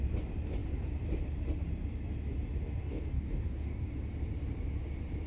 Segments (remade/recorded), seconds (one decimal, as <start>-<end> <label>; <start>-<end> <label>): 0.0-2.8 recorded; 2.8-3.9 remade; 3.9-5.3 recorded